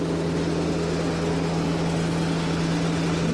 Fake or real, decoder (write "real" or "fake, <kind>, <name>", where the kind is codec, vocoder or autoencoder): real